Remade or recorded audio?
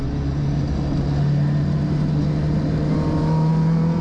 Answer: recorded